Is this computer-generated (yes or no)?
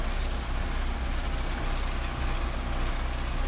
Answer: no